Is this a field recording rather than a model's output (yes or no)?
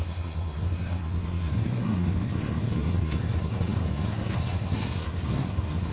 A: no